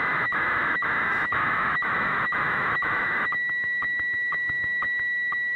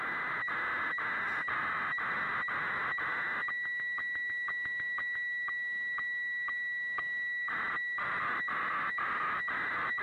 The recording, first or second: second